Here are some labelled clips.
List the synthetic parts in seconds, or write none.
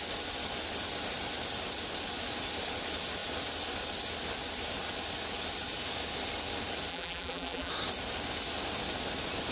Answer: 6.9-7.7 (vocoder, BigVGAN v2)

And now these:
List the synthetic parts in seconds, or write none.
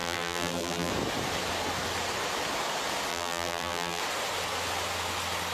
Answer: 0.0-0.9 (vocoder, BigVGAN v2); 3.1-4.0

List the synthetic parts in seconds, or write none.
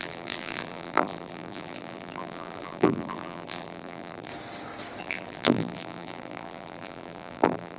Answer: 0.0-4.3 (vocoder, BigVGAN v2); 5.0-7.8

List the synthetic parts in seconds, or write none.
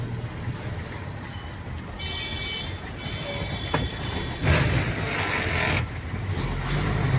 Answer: 3.4-4.1 (vocoder, BigVGAN v2)